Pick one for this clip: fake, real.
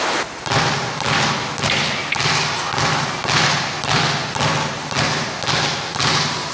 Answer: real